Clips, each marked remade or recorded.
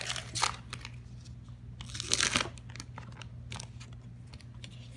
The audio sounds recorded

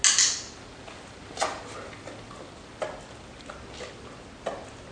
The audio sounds recorded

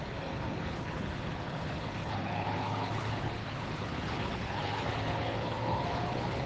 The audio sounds remade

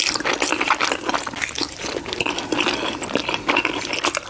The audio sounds recorded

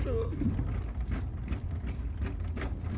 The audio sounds recorded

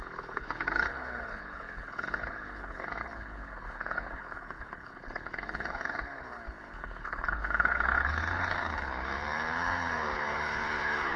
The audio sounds remade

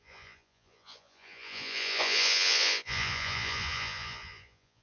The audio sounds remade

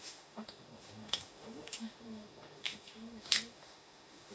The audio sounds remade